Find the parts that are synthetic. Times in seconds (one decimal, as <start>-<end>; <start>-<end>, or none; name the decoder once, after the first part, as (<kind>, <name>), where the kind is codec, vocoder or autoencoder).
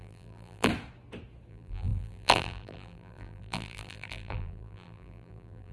0.0-0.7 (vocoder, BigVGAN v2); 1.5-5.7